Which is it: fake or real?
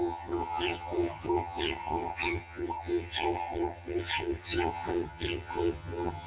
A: fake